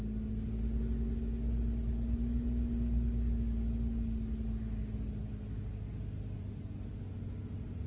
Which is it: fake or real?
real